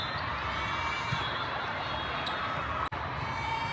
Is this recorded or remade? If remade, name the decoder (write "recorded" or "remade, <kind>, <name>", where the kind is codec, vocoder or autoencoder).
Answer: recorded